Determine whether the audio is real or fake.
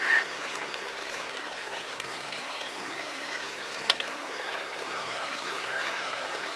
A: fake